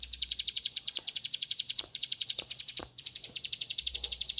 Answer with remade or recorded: remade